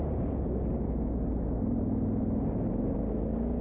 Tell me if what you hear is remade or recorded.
recorded